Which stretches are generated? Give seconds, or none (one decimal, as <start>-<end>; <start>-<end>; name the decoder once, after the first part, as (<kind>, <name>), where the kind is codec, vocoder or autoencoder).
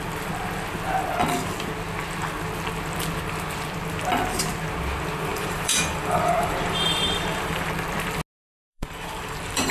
5.3-7.7 (vocoder, BigVGAN v2); 8.7-9.7